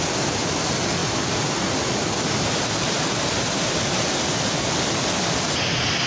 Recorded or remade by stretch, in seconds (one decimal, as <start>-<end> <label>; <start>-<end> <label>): 0.0-6.1 recorded